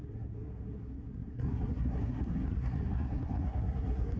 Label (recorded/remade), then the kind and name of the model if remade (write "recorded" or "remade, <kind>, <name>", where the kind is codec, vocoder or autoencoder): remade, codec, SNAC